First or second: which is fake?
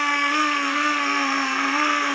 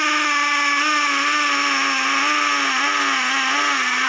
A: first